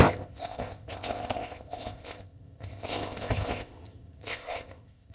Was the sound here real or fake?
fake